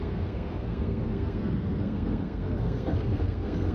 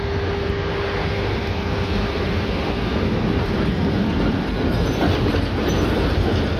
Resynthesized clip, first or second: first